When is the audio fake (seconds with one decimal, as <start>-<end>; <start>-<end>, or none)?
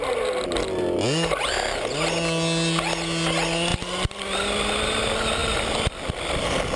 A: none